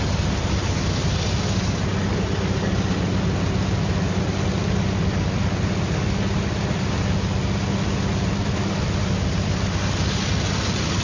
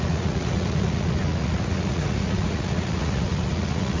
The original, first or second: first